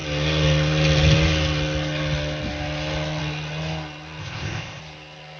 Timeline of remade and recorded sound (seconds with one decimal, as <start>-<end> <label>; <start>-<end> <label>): 0.0-4.2 recorded; 4.2-4.8 remade; 4.8-5.4 recorded